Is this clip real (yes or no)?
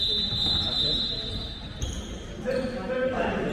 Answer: yes